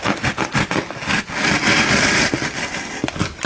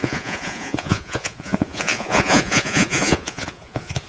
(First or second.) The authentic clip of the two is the first